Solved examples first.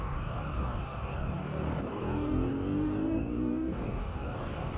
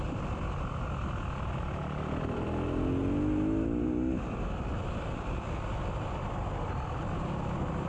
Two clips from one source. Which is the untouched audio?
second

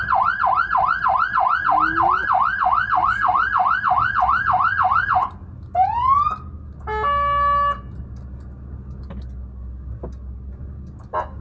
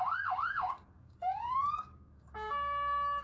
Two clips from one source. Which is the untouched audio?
first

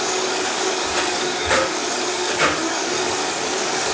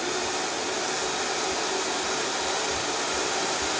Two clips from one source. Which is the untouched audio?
second